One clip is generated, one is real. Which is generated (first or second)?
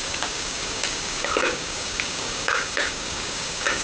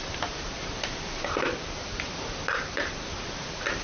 first